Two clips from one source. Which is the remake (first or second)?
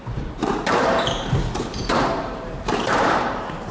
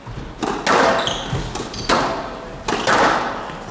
first